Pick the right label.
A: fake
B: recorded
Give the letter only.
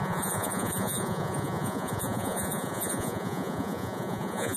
A